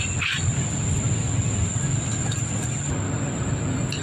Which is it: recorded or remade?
recorded